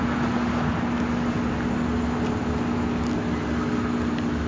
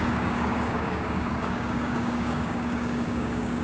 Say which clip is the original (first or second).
first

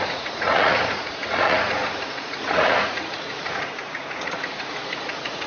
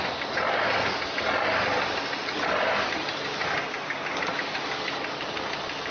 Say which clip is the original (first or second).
second